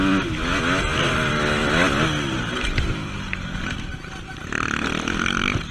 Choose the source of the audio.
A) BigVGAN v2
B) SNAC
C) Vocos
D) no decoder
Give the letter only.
D